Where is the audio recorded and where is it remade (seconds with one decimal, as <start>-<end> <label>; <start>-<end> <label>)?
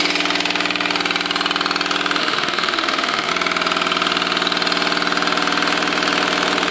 0.0-2.2 recorded; 2.2-3.3 remade; 3.3-6.7 recorded